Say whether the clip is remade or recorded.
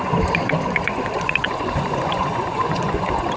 remade